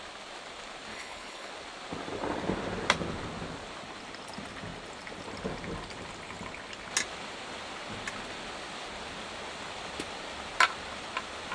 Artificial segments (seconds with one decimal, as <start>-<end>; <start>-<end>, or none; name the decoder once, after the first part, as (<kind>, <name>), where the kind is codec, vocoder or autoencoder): 0.9-1.5 (codec, HILCodec)